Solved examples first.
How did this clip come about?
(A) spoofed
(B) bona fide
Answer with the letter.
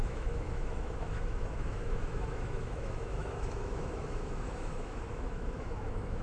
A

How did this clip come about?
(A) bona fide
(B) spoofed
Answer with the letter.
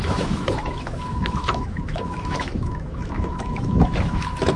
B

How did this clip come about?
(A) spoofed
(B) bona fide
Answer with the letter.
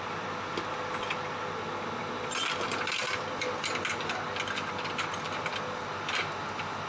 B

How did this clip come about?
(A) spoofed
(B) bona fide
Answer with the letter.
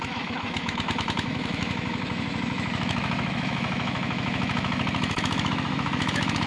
A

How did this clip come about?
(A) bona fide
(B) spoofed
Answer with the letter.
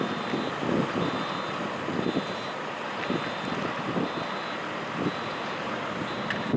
A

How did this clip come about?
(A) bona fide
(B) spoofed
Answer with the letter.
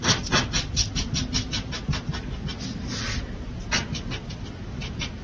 A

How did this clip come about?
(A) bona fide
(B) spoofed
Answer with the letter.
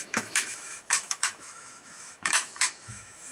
B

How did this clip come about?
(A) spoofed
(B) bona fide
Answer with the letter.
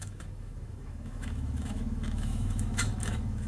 A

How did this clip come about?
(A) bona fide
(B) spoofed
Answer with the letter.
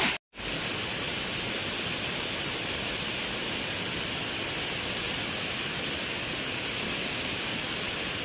A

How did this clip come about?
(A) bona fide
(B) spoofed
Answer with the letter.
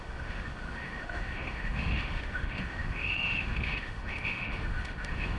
B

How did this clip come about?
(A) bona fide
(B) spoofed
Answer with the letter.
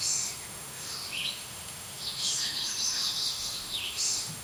B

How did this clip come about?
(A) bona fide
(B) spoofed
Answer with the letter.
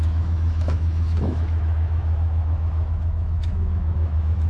B